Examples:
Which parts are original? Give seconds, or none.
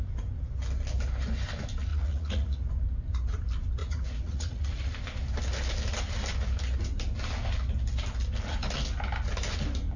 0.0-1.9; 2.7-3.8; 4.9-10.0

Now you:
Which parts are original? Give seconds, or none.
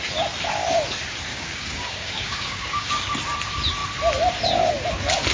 0.0-1.3; 3.1-5.3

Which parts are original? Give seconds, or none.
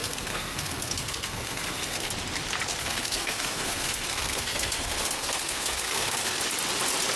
2.1-2.8; 6.4-7.2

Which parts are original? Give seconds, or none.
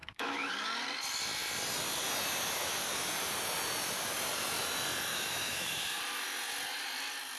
0.5-5.1; 6.0-7.4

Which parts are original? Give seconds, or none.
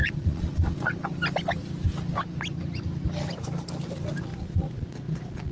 0.9-4.3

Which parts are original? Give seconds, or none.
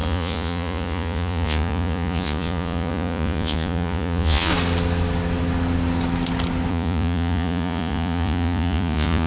4.5-6.7